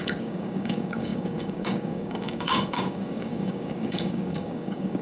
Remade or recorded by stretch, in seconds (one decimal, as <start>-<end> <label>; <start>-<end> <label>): 0.0-5.0 remade